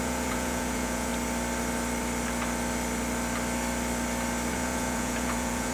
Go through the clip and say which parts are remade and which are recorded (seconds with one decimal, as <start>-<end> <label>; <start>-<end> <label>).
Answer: 0.0-1.1 remade; 1.1-4.5 recorded; 4.5-5.7 remade